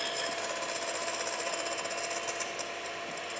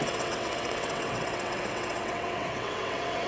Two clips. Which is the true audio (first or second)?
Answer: first